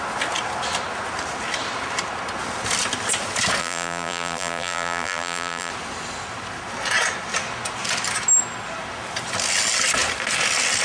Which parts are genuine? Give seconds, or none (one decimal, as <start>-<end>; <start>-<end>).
0.0-3.6; 5.7-10.8